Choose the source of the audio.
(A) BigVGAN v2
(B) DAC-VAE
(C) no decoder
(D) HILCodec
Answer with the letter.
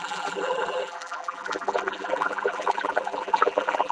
A